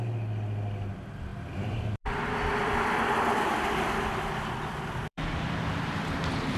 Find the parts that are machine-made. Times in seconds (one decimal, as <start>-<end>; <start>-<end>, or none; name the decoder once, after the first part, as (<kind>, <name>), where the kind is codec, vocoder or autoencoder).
1.3-5.3 (vocoder, BigVGAN v2)